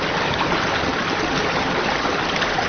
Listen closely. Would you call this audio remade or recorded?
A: recorded